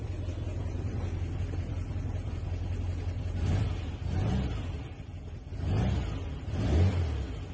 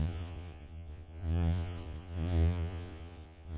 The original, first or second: first